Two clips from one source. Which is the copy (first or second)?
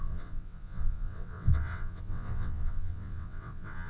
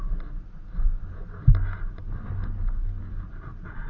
first